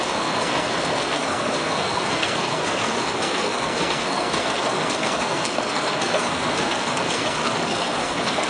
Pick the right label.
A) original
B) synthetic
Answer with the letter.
B